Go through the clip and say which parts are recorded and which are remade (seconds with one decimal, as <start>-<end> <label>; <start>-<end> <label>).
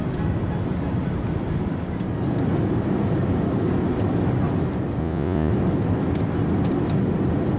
0.0-5.0 recorded; 5.0-5.5 remade; 5.5-7.6 recorded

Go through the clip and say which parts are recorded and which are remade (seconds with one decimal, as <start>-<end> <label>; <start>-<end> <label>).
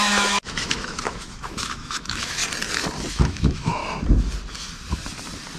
0.0-2.4 remade; 2.4-3.1 recorded; 3.1-3.8 remade; 3.8-5.6 recorded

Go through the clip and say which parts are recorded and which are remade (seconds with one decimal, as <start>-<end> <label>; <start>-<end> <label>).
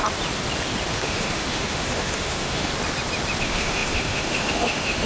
0.0-0.9 recorded; 0.9-2.7 remade; 2.7-3.4 recorded; 3.4-5.1 remade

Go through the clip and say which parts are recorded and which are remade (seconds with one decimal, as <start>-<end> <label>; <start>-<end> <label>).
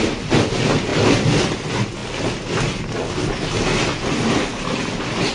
0.0-0.9 recorded; 0.9-1.4 remade; 1.4-5.3 recorded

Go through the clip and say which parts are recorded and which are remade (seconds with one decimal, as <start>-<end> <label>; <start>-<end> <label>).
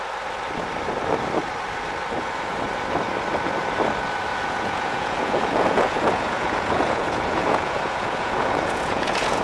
0.0-4.3 recorded; 4.3-9.4 remade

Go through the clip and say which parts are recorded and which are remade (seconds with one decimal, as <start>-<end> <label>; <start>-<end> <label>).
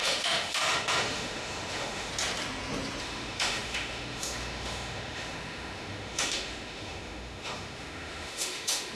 0.0-2.1 remade; 2.1-3.0 recorded; 3.0-9.0 remade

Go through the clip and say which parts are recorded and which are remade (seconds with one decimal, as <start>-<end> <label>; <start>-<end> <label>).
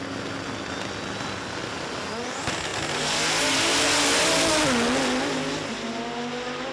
0.0-6.7 recorded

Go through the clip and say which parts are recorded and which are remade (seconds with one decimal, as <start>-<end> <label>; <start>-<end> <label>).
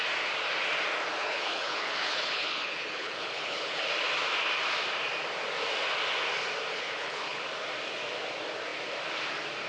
0.0-1.1 recorded; 1.1-3.8 remade; 3.8-6.7 recorded; 6.7-7.4 remade; 7.4-9.7 recorded